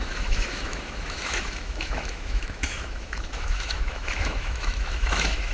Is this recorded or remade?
remade